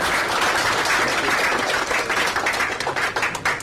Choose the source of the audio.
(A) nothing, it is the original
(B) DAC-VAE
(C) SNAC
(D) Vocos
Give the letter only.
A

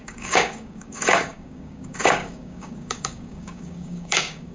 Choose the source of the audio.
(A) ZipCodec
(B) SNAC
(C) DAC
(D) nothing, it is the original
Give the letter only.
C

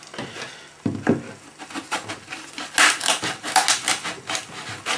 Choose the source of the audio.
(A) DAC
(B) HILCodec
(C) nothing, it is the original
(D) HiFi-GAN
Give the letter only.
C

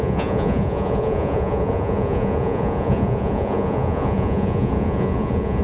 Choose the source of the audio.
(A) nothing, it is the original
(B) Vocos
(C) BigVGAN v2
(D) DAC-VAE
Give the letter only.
B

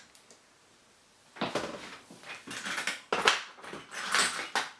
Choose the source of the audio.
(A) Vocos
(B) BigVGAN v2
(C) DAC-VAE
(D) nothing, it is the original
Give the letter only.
D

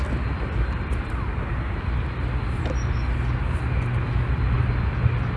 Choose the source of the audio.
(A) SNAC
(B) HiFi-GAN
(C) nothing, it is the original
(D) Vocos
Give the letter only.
C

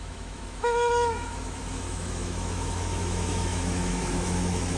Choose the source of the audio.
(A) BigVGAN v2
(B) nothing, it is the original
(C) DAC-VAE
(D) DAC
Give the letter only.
C